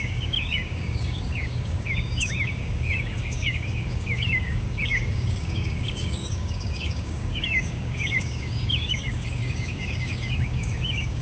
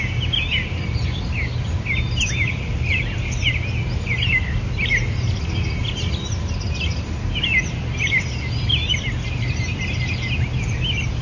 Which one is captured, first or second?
second